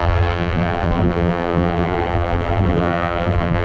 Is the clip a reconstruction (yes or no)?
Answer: yes